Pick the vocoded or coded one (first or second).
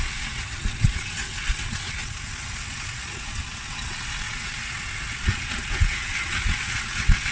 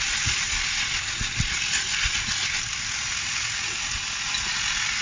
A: first